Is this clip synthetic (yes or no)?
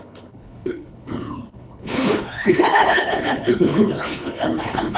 yes